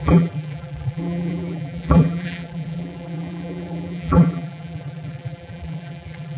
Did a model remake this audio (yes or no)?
yes